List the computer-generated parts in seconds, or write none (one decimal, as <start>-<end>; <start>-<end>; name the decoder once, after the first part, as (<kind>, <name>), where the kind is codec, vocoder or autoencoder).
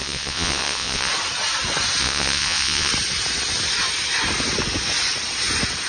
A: 0.0-1.1 (vocoder, WaveNeXt); 2.0-2.9